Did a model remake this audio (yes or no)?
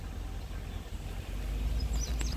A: no